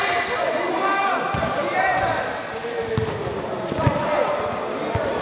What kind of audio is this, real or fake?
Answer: real